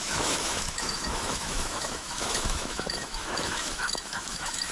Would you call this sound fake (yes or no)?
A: yes